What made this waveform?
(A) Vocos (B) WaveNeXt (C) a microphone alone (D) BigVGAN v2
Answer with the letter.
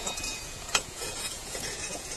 A